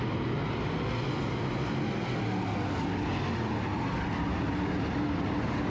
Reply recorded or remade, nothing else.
recorded